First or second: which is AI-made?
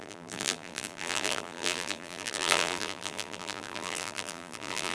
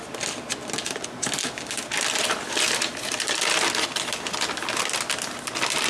first